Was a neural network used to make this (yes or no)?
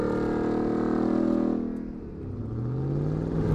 no